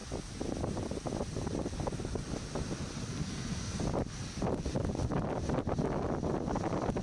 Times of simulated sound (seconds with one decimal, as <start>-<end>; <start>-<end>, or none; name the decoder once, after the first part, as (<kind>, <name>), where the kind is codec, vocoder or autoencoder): 3.1-3.8 (codec, SNAC)